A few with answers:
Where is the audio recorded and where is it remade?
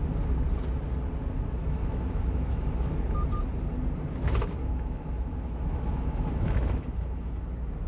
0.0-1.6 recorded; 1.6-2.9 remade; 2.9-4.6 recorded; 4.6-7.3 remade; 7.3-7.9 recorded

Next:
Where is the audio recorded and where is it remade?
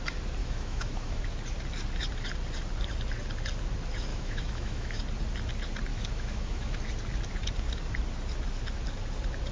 0.0-0.4 recorded; 0.4-1.2 remade; 1.2-4.1 recorded; 4.1-5.0 remade; 5.0-5.9 recorded; 5.9-6.8 remade; 6.8-9.5 recorded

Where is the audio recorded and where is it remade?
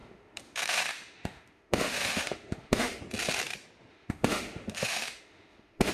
0.0-3.0 remade; 3.0-3.9 recorded; 3.9-5.9 remade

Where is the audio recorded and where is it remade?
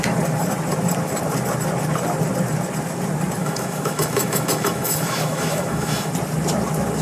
0.0-3.4 recorded; 3.4-6.1 remade; 6.1-7.0 recorded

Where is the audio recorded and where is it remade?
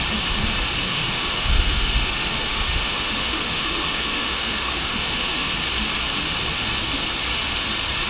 0.0-0.9 recorded; 0.9-5.5 remade; 5.5-8.1 recorded